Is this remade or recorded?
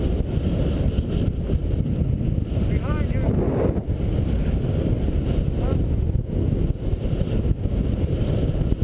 recorded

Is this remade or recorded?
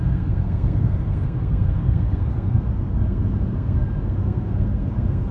remade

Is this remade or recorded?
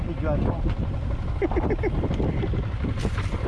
recorded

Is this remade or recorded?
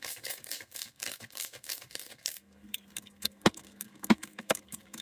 remade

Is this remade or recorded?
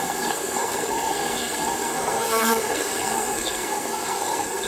remade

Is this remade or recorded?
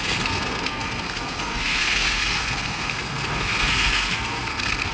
remade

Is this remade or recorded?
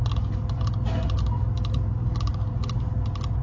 recorded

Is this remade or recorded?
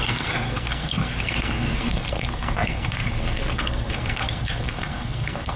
remade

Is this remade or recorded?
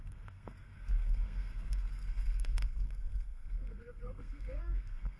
remade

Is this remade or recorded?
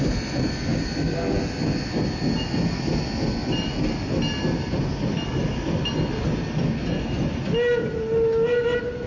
recorded